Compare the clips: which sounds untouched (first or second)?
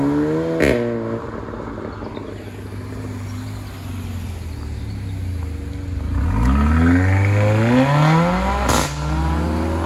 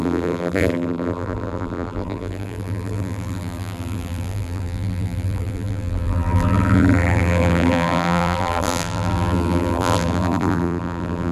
first